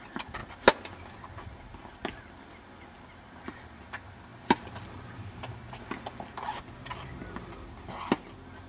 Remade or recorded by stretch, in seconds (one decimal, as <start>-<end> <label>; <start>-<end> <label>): 0.0-8.7 recorded